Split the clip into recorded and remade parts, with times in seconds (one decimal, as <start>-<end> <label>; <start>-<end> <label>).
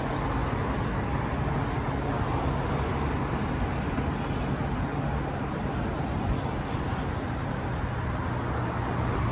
0.0-9.3 recorded